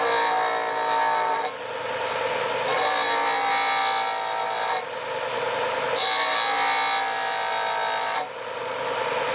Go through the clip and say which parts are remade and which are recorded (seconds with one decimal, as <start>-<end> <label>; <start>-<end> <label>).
0.0-9.3 recorded